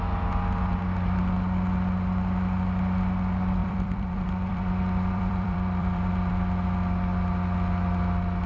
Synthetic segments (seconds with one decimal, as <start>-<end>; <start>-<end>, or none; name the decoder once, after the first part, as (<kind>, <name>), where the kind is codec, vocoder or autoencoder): 3.6-6.3 (vocoder, BigVGAN v2)